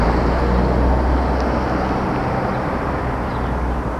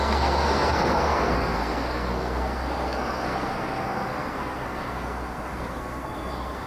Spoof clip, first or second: second